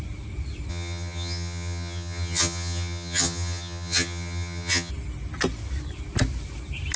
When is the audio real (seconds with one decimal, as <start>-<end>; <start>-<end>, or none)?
0.0-0.7; 4.9-7.0